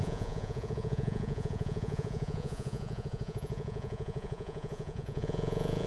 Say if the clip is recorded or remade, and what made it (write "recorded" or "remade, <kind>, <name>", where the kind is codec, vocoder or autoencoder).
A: remade, vocoder, Vocos